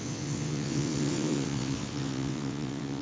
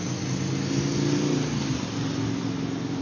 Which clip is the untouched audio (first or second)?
second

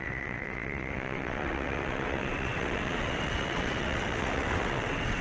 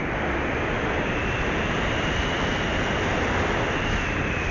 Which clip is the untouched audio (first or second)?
second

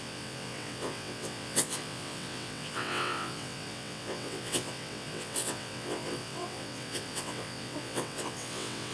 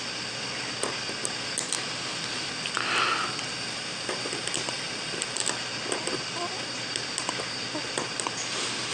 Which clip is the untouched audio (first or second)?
second